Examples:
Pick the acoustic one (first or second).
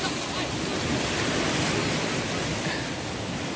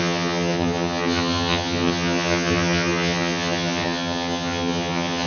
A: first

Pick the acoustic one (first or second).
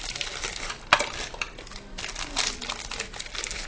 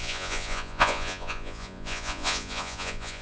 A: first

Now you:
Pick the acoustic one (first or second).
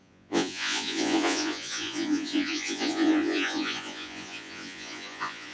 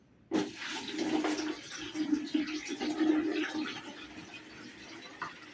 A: second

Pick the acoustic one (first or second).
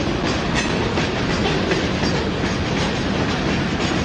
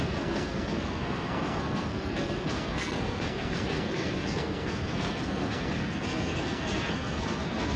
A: first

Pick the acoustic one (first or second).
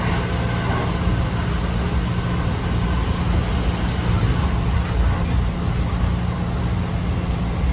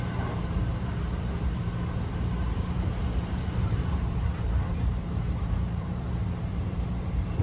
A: first